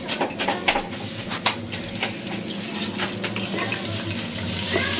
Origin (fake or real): real